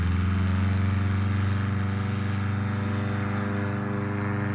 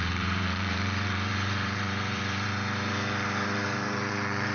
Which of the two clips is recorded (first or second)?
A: first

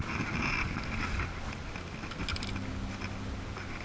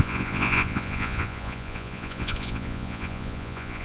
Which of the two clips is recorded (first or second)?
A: first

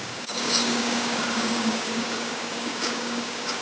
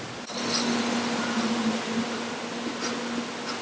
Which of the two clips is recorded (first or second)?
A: second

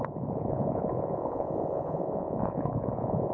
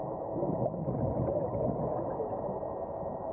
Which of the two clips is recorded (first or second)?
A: second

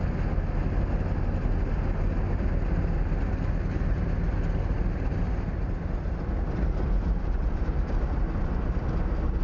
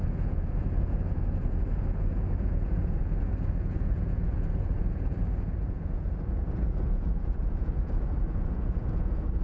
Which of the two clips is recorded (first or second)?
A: first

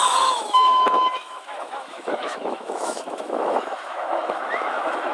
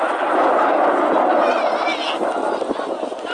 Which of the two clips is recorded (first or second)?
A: second